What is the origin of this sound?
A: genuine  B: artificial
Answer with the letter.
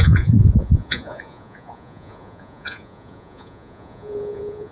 B